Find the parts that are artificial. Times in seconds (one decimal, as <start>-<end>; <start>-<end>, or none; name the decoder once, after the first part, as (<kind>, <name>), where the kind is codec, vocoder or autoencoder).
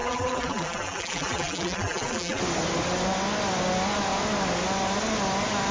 0.0-2.4 (vocoder, BigVGAN v2)